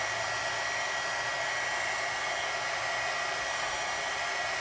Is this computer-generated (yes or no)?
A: no